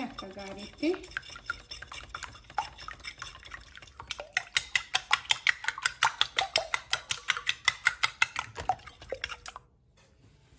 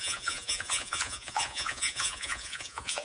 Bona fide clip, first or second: first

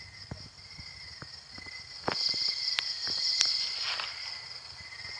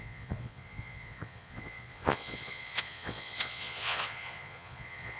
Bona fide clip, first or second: first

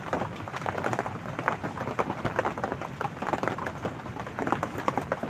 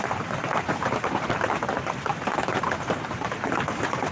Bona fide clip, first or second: first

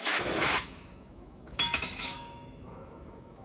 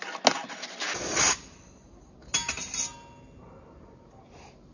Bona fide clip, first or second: second